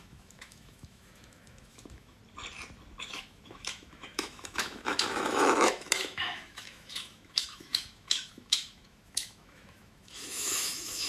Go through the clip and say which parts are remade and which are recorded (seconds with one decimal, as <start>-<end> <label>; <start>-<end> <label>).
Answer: 0.0-2.2 remade; 2.2-3.0 recorded; 3.0-11.1 remade